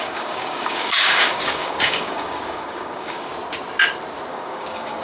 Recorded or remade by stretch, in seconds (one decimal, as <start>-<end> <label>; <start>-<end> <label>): 0.0-3.3 remade; 3.3-4.3 recorded; 4.3-5.0 remade